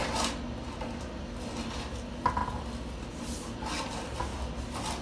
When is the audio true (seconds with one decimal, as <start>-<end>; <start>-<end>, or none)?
0.0-5.0

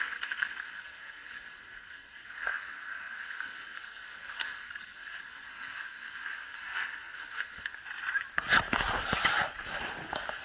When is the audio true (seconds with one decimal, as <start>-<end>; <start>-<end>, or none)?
7.7-10.4

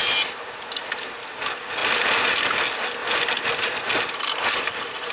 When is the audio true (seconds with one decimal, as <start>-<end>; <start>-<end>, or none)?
0.0-5.1

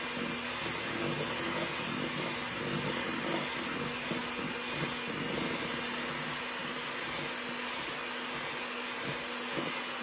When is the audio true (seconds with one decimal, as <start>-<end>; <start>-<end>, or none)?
0.0-10.0

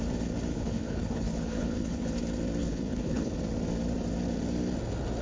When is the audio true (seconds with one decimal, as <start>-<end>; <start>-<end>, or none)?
0.0-0.5; 2.1-2.6; 3.4-5.2